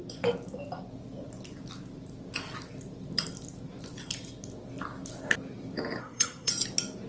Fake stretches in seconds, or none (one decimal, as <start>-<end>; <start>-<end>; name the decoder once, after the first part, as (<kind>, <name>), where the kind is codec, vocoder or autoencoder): 6.0-6.5 (codec, SNAC)